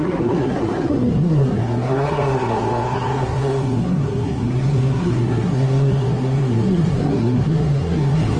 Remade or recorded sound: remade